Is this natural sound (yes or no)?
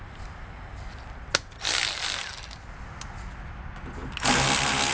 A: yes